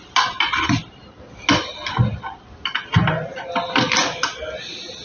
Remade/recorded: recorded